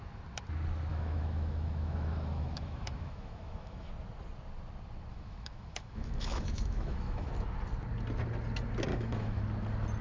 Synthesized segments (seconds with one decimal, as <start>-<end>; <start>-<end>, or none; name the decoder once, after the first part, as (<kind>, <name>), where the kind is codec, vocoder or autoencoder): 0.9-3.9 (autoencoder, DAC-VAE); 5.1-7.3; 8.9-9.4